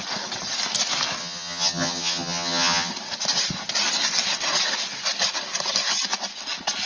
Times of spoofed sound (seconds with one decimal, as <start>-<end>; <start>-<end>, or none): 1.2-2.9